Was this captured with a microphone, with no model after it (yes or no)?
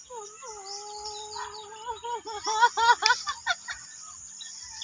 yes